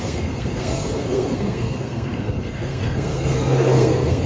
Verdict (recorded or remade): remade